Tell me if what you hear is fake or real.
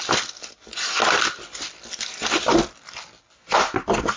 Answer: real